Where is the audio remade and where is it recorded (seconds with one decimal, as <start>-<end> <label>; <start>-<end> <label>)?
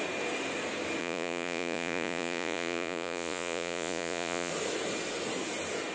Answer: 0.0-1.0 recorded; 1.0-4.5 remade; 4.5-5.9 recorded